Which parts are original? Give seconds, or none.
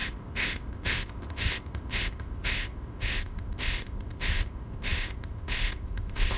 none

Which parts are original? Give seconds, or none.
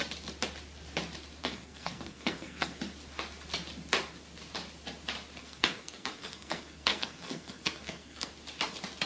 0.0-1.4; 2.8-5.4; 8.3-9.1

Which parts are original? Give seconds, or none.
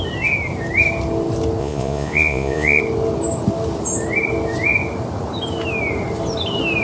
0.0-1.6; 2.8-6.8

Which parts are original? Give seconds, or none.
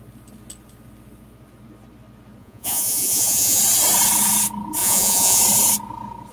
0.0-2.4; 3.6-4.8; 5.4-6.3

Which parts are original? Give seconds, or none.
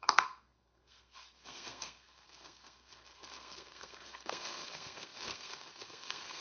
none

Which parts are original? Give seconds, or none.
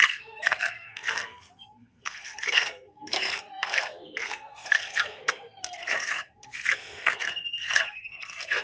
none